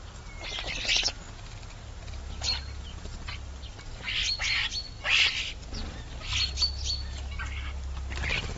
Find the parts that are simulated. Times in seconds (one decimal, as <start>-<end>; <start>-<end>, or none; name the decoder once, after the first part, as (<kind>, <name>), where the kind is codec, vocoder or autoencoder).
none